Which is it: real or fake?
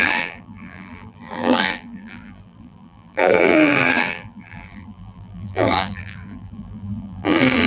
fake